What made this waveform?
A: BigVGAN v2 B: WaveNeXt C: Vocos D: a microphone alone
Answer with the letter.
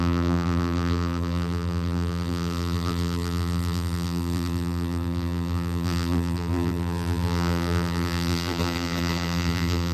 A